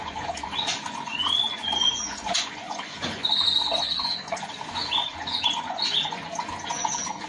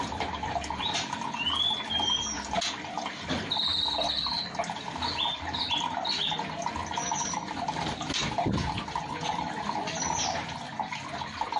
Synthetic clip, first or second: first